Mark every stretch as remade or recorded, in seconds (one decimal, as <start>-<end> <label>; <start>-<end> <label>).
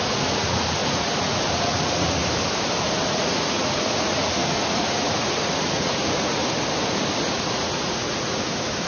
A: 0.0-2.2 remade; 2.2-3.0 recorded; 3.0-6.4 remade; 6.4-7.2 recorded; 7.2-8.9 remade